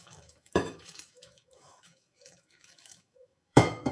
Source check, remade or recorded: remade